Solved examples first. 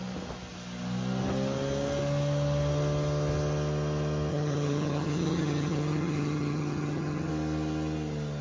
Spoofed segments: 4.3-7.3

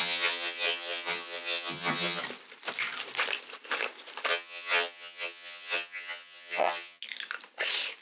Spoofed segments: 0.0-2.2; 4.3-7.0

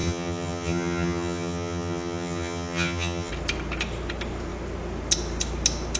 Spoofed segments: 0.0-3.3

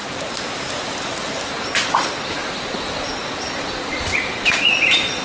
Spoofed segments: none

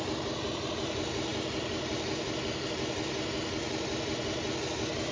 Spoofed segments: none

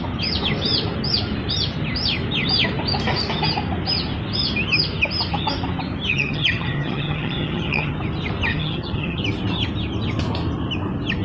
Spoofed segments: 6.1-7.9; 8.5-9.2

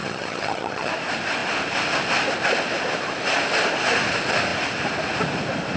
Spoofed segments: 0.0-0.9

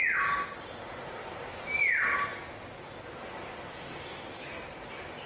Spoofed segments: none